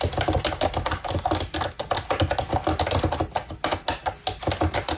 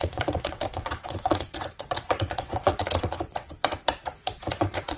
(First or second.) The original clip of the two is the first